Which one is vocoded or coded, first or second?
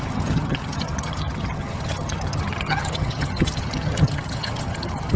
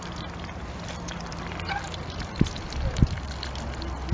first